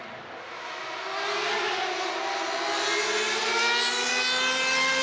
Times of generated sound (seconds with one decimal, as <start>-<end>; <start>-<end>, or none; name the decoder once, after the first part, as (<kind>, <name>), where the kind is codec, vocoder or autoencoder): none